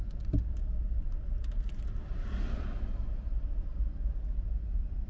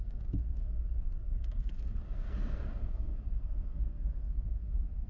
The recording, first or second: first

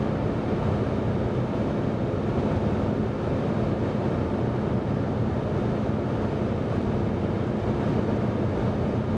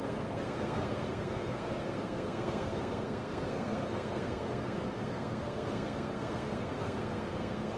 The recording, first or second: first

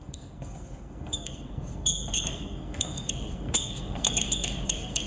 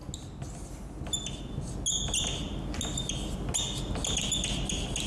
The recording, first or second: second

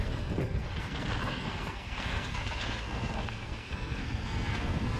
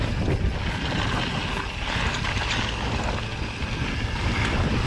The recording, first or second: second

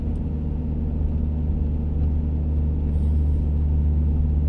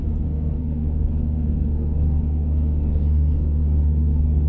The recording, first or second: first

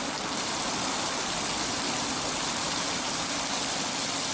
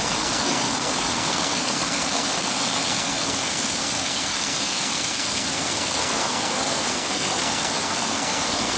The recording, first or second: first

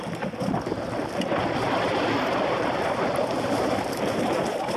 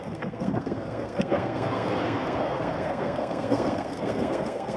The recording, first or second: first